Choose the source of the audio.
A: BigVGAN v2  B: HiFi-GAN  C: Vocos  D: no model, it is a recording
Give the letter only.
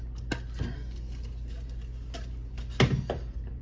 D